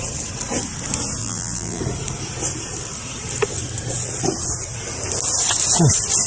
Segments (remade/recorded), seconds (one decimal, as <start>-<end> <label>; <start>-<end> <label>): 0.0-1.2 recorded; 1.2-1.8 remade; 1.8-6.3 recorded